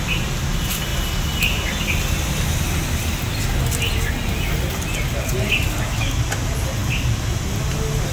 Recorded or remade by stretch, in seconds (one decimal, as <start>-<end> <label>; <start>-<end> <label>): 0.0-8.1 recorded